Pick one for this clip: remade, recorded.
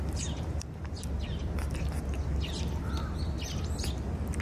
recorded